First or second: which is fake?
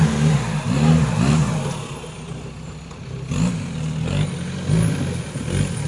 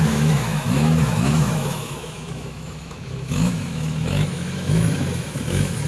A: second